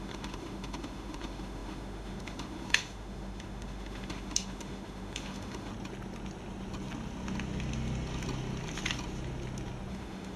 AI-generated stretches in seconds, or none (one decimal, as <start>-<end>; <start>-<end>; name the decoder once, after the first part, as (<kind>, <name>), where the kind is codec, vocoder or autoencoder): 0.0-5.7 (autoencoder, DAC-VAE); 9.9-10.4